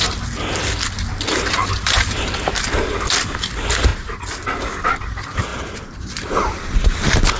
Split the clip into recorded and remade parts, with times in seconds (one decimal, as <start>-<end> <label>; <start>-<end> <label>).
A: 0.0-1.6 recorded; 1.6-2.2 remade; 2.2-5.5 recorded; 5.5-7.4 remade